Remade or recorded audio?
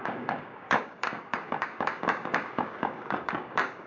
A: remade